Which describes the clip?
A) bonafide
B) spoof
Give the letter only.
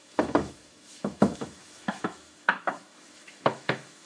B